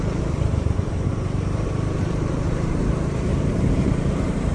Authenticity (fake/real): fake